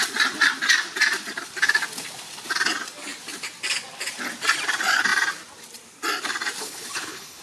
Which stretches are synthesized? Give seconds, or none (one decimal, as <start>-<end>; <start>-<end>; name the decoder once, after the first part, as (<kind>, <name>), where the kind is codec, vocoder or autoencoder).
6.6-7.4 (codec, HILCodec)